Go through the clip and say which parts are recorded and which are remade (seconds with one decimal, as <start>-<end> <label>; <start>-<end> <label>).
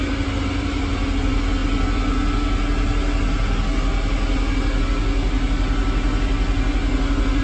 0.0-7.4 recorded